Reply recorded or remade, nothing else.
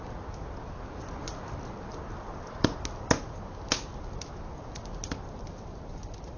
recorded